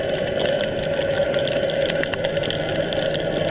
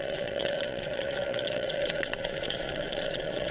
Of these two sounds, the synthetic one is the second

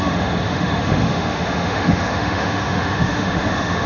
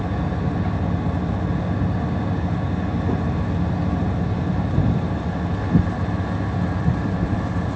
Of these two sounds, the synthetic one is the first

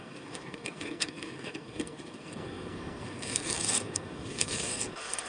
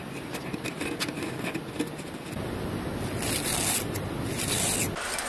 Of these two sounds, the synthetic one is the first